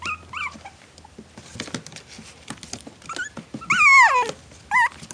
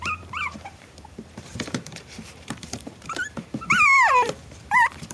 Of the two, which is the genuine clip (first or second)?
first